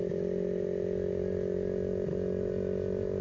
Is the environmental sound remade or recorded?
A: recorded